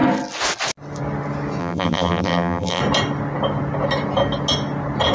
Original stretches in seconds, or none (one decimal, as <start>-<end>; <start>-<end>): 0.0-1.6; 2.8-5.1